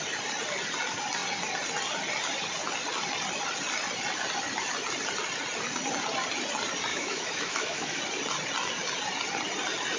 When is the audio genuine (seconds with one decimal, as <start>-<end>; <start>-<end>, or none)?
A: 0.0-6.9; 8.0-10.0